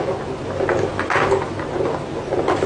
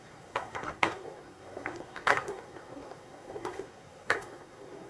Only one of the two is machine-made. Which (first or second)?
second